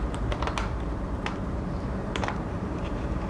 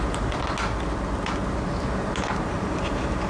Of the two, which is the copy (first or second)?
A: first